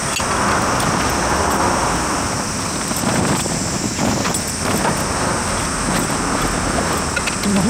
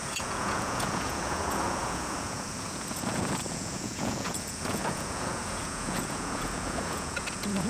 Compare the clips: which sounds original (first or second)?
first